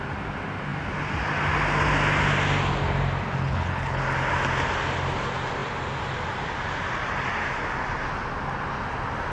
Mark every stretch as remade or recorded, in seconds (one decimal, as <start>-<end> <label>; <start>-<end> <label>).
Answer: 0.0-3.4 recorded; 3.4-4.0 remade; 4.0-9.3 recorded